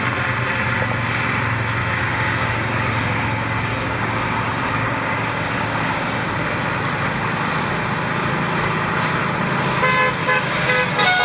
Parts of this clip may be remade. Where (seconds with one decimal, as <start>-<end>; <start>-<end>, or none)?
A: 1.8-6.3; 10.2-11.2